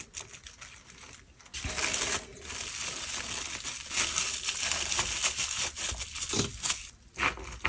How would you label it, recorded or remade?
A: recorded